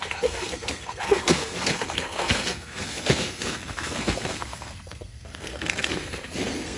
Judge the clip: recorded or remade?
remade